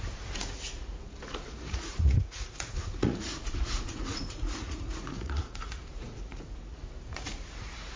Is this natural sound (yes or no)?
no